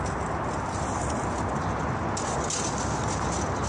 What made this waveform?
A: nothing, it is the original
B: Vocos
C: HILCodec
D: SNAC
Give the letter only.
A